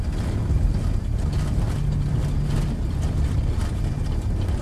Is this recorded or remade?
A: recorded